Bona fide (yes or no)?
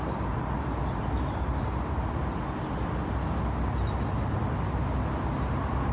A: yes